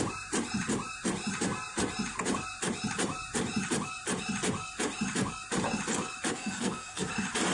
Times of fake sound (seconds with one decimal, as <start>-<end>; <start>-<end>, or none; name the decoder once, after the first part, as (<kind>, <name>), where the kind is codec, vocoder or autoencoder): 6.3-7.1 (codec, SNAC)